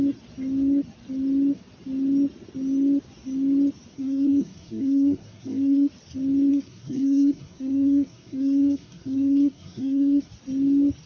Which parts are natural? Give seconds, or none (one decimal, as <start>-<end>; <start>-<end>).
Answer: 0.0-3.9; 5.9-6.5; 10.3-11.1